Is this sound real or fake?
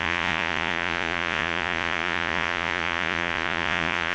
fake